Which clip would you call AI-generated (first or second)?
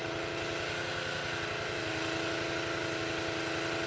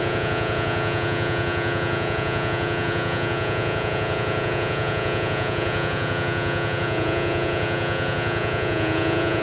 second